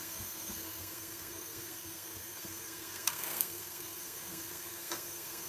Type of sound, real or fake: fake